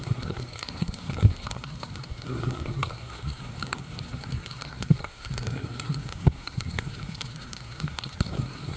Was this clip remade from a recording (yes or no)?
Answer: yes